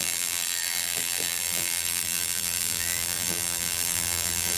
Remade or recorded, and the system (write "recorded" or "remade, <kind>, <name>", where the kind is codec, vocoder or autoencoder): remade, vocoder, BigVGAN v2